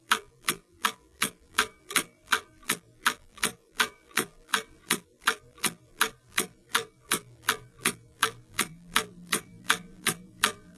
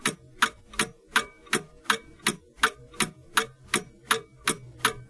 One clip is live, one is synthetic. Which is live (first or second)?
second